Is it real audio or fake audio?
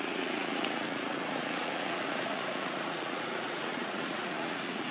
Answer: fake